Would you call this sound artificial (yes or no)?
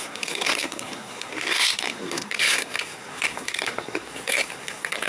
yes